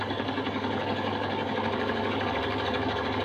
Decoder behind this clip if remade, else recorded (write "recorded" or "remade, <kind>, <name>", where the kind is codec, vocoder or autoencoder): remade, codec, DAC